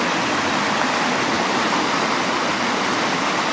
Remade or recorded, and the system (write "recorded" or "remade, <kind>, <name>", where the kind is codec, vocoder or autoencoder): recorded